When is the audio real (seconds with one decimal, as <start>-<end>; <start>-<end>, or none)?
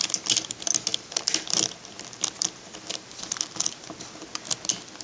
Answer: 0.0-5.0